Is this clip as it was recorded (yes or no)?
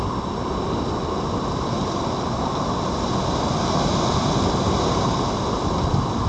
yes